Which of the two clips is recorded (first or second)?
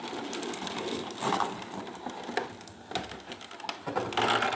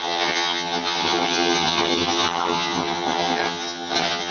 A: first